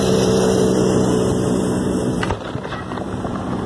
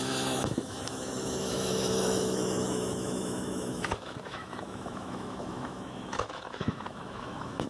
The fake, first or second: second